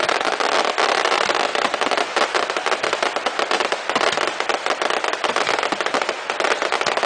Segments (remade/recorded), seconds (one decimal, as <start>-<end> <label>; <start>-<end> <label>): 0.0-7.1 recorded